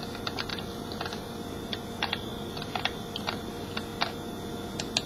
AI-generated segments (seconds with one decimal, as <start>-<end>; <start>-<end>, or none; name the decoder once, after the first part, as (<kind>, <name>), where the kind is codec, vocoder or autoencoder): 0.5-1.7 (vocoder, BigVGAN v2); 2.3-3.5